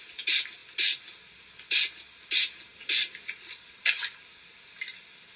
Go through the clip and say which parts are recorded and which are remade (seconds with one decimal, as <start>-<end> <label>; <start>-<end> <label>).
0.0-5.4 recorded